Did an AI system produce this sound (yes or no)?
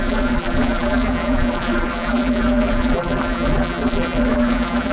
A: yes